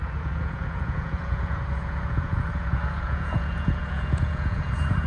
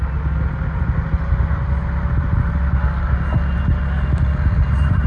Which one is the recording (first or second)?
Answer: second